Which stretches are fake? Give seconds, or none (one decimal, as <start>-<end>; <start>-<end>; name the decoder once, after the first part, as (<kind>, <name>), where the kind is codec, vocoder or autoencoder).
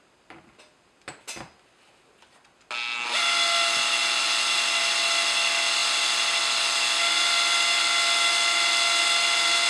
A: none